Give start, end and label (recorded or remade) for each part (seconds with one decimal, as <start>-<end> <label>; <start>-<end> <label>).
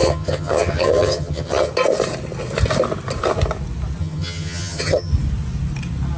0.0-1.7 remade; 1.7-4.0 recorded; 4.0-5.1 remade; 5.1-6.2 recorded